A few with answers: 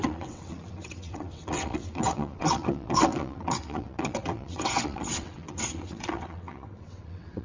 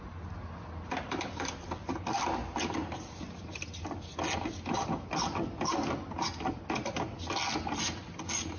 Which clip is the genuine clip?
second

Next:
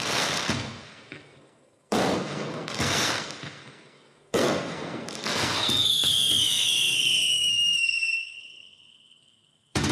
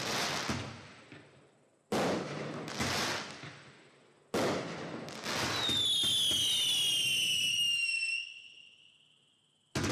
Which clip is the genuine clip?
second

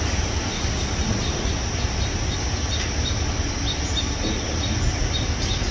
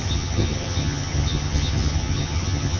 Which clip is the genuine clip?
first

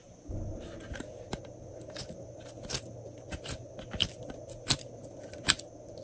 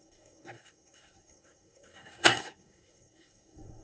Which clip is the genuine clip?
first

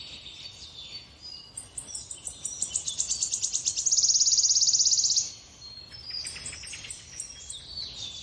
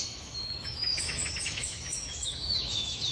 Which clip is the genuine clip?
first